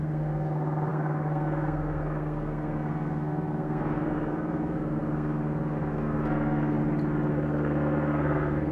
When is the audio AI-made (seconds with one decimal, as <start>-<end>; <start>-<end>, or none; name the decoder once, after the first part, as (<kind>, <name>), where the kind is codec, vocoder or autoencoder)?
0.0-6.8 (codec, SNAC); 7.3-8.7